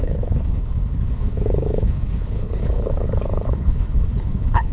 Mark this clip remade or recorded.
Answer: remade